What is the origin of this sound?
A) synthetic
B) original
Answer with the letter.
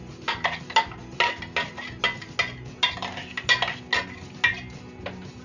B